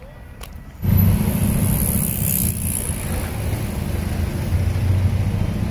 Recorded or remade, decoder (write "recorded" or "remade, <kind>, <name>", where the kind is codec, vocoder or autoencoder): recorded